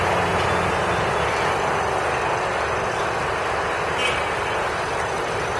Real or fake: real